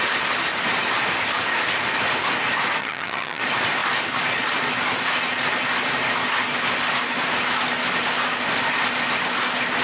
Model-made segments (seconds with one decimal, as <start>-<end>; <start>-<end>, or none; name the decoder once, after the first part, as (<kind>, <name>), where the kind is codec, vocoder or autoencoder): 2.8-3.4 (vocoder, HiFi-GAN)